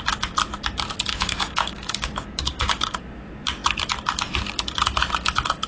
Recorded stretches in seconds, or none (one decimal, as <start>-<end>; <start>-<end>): 0.0-1.1; 3.0-5.7